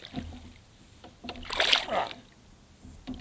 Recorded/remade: recorded